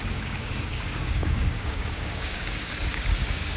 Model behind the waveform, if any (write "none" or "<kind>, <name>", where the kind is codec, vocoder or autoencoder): codec, DAC